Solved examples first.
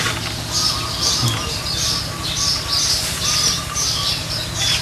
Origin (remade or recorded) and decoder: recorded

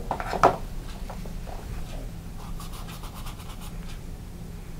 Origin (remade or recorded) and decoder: recorded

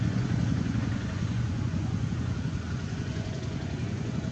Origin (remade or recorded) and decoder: remade, vocoder, Vocos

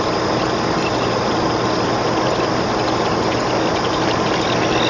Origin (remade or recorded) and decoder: recorded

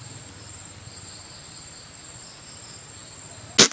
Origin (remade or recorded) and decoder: recorded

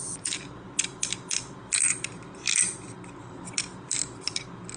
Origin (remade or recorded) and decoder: remade, vocoder, BigVGAN v2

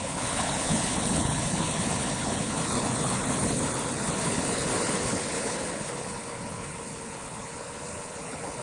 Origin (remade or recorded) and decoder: remade, codec, HILCodec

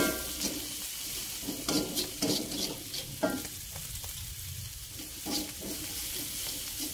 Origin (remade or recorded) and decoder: recorded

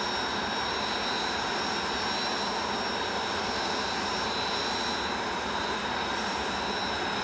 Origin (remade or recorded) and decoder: recorded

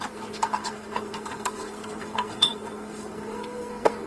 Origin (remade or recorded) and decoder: remade, codec, SNAC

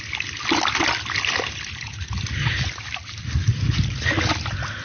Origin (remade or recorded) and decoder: recorded